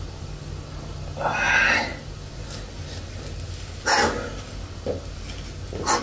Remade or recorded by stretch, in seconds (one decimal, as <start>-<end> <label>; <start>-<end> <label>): 0.0-6.0 recorded